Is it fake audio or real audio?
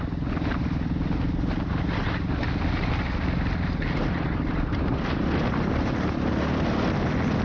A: real